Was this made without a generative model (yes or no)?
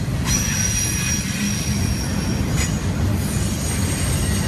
yes